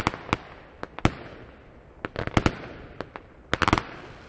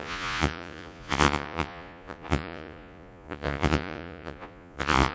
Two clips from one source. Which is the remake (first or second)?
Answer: second